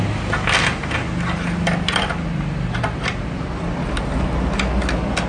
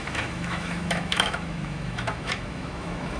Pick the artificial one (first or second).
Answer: second